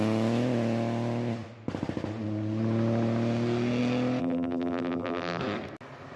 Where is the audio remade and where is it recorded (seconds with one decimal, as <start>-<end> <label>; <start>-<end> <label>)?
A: 0.0-4.2 recorded; 4.2-5.4 remade; 5.4-6.2 recorded